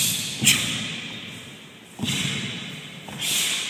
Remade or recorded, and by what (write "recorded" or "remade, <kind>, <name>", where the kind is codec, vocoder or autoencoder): recorded